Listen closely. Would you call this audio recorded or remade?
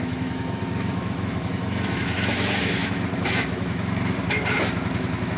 remade